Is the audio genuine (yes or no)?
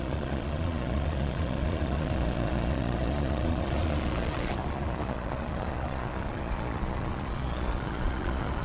no